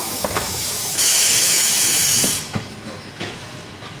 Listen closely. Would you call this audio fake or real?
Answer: fake